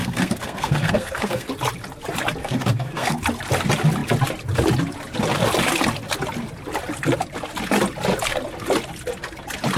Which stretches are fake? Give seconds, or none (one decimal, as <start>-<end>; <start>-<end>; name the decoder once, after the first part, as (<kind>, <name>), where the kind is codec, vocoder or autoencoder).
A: 0.0-1.5 (codec, SNAC); 2.4-3.2

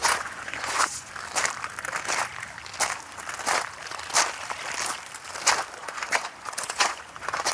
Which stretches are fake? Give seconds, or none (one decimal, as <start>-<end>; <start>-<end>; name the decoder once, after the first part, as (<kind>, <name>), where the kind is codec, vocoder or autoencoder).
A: 0.0-1.1 (vocoder, Vocos); 5.8-7.5

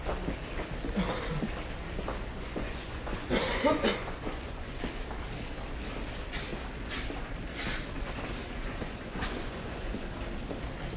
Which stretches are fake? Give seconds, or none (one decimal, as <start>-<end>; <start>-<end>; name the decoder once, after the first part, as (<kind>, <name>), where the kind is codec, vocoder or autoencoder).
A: 2.3-4.8 (vocoder, Vocos); 8.4-10.0

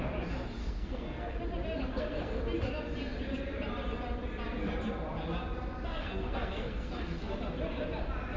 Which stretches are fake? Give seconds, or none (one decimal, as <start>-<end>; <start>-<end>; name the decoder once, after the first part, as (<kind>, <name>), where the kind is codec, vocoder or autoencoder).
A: 0.6-1.4 (codec, SNAC); 1.9-2.4; 5.9-7.3

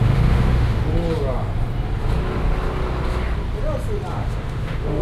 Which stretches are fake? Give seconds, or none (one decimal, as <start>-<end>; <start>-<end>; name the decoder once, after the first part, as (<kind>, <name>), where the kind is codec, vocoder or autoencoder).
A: 0.0-0.8 (autoencoder, DAC-VAE); 4.1-5.0